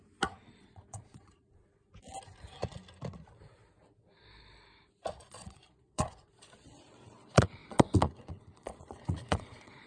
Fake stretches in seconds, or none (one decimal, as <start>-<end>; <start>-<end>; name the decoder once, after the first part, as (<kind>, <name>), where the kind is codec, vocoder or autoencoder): 0.6-1.3 (vocoder, Vocos); 5.2-9.9